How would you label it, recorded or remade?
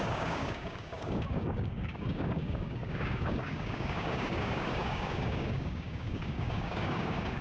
remade